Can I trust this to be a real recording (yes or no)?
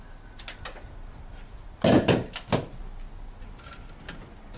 yes